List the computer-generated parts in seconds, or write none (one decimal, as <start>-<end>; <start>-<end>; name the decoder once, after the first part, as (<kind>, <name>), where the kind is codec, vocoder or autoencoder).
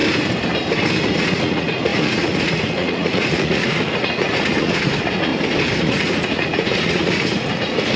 1.0-5.3 (vocoder, Vocos); 5.8-8.0